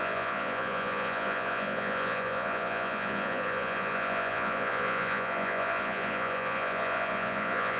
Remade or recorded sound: remade